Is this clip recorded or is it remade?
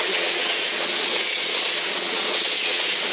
remade